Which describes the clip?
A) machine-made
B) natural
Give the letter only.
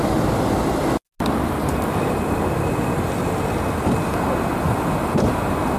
B